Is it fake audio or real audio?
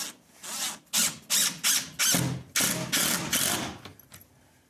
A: real